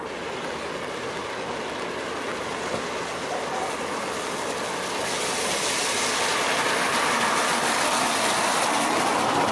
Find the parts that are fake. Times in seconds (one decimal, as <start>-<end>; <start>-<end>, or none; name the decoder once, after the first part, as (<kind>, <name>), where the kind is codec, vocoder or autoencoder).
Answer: none

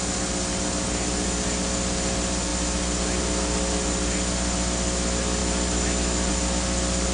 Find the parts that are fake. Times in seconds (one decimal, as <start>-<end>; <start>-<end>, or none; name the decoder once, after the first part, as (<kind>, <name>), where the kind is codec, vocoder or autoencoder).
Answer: none

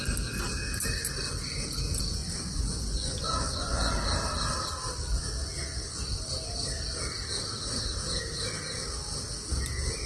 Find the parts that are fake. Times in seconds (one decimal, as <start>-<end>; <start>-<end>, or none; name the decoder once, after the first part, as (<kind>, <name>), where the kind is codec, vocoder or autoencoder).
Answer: 2.2-3.9 (vocoder, Vocos)

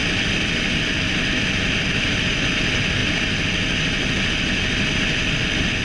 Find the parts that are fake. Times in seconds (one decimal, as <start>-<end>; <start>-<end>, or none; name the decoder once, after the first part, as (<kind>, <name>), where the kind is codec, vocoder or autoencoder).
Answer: 0.0-2.6 (vocoder, BigVGAN v2)

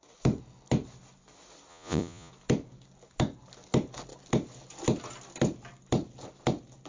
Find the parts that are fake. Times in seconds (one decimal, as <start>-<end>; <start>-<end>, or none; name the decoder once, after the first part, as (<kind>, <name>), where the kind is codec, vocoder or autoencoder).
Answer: 1.7-2.3 (vocoder, Vocos)

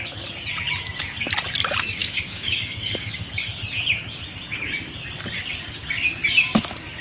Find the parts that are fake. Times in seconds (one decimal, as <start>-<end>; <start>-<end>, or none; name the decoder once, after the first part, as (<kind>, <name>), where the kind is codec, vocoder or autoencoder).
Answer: 2.0-3.3 (codec, DAC)

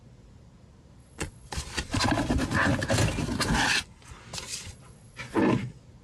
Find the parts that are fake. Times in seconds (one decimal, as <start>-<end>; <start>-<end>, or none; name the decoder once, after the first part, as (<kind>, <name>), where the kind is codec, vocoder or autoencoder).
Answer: 1.0-2.1 (vocoder, Vocos); 4.5-5.4